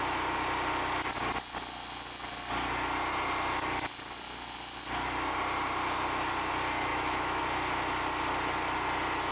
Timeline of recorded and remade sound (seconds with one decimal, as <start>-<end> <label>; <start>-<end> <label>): 0.0-6.9 recorded; 6.9-7.4 remade; 7.4-9.3 recorded